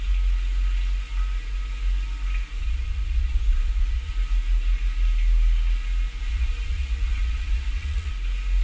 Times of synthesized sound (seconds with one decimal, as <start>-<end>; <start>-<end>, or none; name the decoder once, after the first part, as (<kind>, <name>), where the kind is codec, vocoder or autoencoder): 2.6-4.1 (vocoder, Vocos); 6.2-8.1